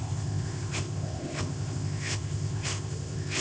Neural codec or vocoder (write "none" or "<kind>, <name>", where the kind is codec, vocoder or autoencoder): codec, ZipCodec